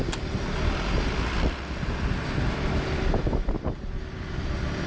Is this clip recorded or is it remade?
recorded